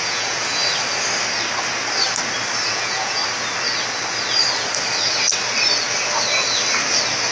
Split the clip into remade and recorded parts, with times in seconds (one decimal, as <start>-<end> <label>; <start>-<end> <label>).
0.0-0.6 remade; 0.6-2.7 recorded; 2.7-3.2 remade; 3.2-7.3 recorded